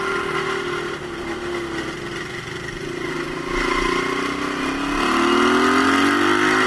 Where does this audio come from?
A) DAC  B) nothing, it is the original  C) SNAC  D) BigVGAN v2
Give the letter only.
B